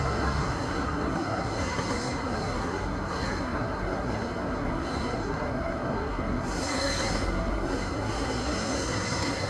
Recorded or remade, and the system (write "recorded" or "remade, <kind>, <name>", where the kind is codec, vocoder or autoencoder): remade, codec, SNAC